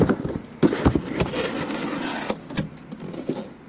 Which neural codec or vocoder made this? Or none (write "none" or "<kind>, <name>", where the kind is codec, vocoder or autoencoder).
none